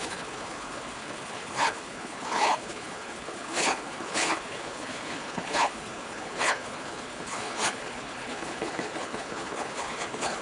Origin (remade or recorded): remade